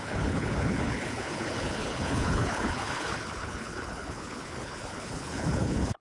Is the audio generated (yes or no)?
yes